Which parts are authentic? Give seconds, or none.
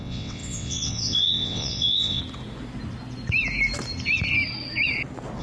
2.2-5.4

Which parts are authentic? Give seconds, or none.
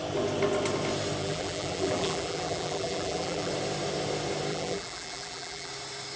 0.0-1.2; 3.5-4.5; 5.7-6.2